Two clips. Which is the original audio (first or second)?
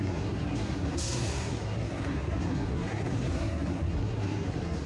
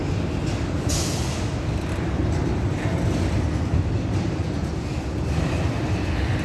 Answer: second